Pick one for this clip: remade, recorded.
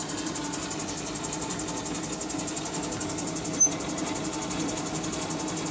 recorded